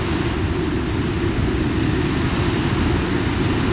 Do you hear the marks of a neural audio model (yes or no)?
no